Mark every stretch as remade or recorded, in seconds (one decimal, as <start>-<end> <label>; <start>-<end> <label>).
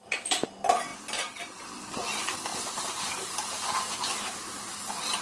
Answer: 0.0-0.9 recorded; 0.9-1.6 remade; 1.6-2.5 recorded; 2.5-3.3 remade; 3.3-5.2 recorded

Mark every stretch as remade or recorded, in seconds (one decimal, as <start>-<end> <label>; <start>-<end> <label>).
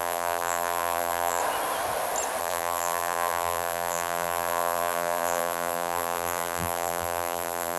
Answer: 0.0-1.4 remade; 1.4-2.4 recorded; 2.4-7.8 remade